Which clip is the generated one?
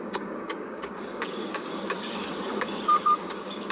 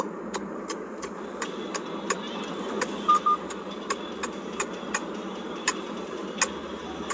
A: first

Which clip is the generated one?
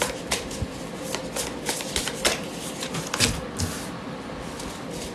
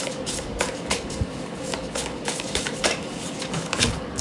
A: second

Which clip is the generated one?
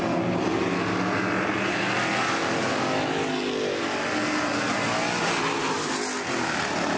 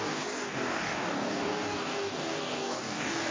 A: second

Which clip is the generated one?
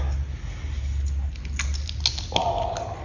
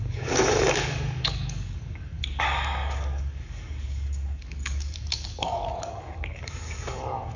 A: second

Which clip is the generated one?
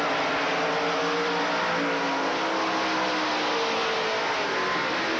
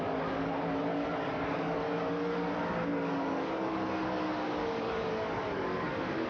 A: second